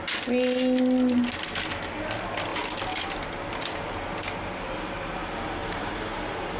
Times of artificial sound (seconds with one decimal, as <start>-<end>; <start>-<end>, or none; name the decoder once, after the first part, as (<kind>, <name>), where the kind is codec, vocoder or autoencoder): 5.6-6.6 (vocoder, BigVGAN v2)